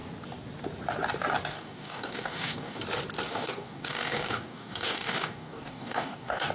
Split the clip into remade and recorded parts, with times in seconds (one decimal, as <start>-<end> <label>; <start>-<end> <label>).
0.0-1.5 recorded; 1.5-2.8 remade; 2.8-3.3 recorded; 3.3-6.5 remade